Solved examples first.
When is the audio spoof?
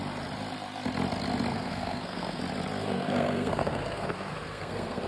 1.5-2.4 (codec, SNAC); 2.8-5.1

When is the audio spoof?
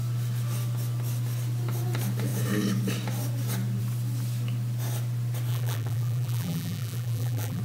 5.5-7.6 (vocoder, BigVGAN v2)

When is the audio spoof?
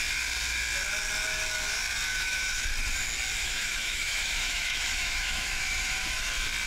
2.1-2.7 (autoencoder, DAC-VAE); 3.4-6.3